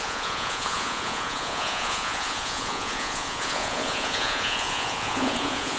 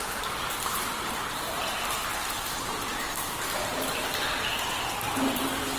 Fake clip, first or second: first